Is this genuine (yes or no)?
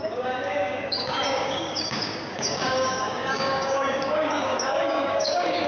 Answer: no